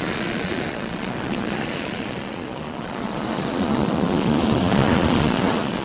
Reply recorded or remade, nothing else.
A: remade